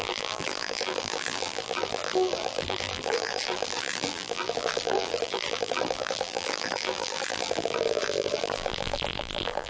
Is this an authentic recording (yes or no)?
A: no